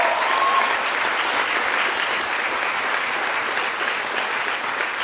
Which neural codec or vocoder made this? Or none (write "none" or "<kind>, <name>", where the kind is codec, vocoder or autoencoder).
none